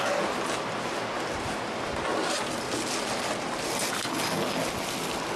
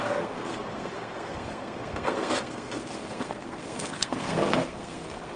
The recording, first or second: first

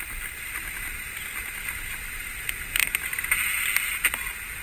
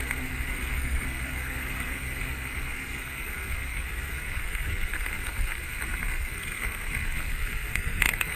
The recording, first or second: first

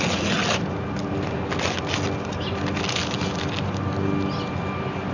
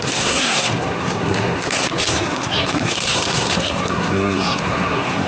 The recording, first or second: first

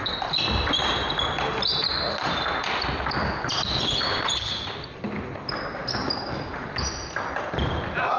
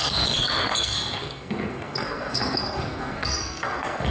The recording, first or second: first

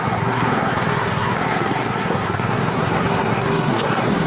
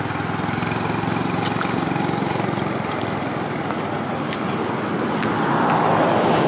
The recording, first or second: second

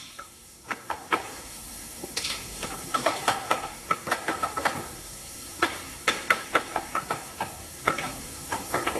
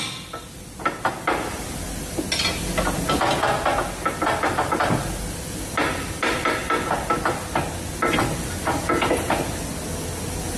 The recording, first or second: second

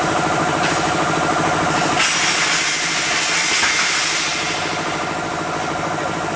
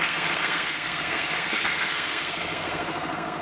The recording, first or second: first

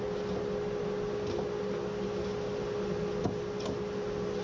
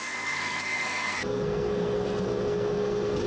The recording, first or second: first